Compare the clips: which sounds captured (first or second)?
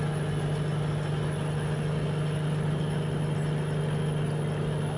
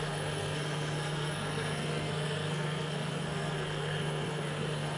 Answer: first